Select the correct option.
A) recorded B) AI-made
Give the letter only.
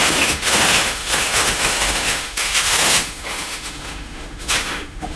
B